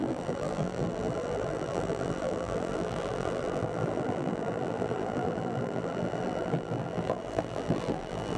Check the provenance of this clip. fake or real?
fake